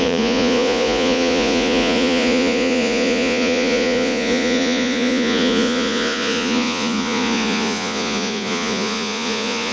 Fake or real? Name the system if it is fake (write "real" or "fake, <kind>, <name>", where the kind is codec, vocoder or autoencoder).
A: fake, vocoder, Vocos